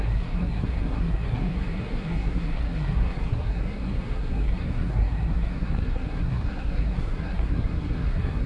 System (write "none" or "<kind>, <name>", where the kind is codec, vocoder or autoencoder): codec, SNAC